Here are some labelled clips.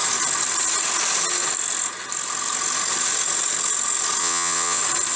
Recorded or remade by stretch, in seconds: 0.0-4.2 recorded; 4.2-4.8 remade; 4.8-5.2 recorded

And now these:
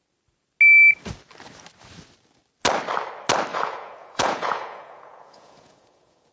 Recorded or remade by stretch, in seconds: 0.0-3.5 recorded; 3.5-6.3 remade

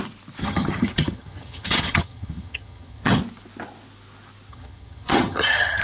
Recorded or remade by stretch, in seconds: 0.0-0.4 recorded; 0.4-3.2 remade; 3.2-4.5 recorded; 4.5-5.8 remade